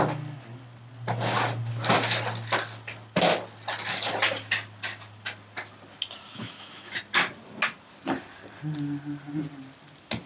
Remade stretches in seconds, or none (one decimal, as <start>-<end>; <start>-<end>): 6.3-7.0